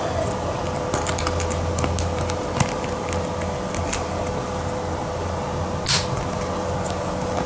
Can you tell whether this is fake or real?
real